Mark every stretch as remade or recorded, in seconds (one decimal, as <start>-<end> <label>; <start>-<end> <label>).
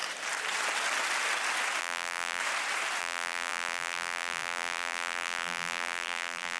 0.0-1.8 recorded; 1.8-2.4 remade; 2.4-3.0 recorded; 3.0-6.6 remade